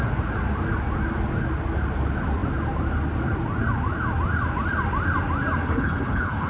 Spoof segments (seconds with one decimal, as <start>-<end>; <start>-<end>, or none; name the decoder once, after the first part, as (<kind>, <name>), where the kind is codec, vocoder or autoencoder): 5.6-6.5 (codec, HILCodec)